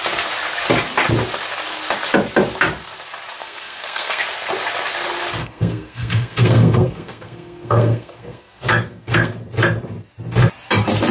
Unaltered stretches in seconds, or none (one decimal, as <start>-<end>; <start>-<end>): 0.0-3.4; 4.2-5.4; 9.3-11.1

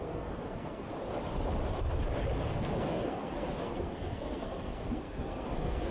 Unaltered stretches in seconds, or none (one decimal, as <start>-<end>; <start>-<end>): 0.9-2.5

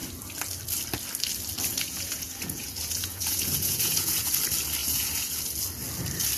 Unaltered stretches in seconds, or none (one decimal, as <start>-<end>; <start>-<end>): 0.0-1.7; 4.3-4.8; 5.4-6.4

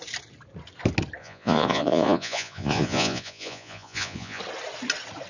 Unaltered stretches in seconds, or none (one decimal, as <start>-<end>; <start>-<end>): 0.0-1.2; 4.4-5.3

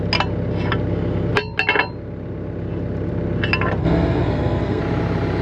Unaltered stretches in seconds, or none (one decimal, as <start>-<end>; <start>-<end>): 0.0-3.8; 4.8-5.4

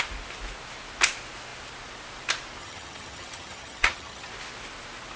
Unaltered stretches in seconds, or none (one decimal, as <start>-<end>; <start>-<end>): 0.0-2.6; 4.3-5.2